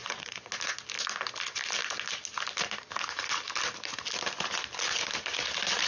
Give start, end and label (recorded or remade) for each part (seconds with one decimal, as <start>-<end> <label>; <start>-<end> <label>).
0.0-0.5 remade; 0.5-5.9 recorded